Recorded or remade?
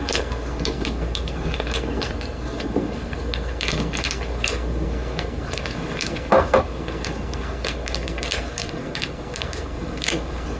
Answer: remade